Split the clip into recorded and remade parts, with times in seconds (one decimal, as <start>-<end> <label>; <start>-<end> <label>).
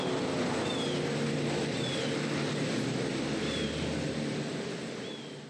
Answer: 0.0-5.5 recorded